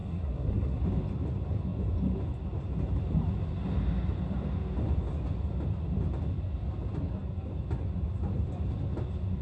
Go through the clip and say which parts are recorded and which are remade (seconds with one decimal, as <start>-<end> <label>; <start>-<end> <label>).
0.0-0.8 remade; 0.8-9.4 recorded